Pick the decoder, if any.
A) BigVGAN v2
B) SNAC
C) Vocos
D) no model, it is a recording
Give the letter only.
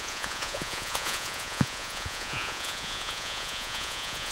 C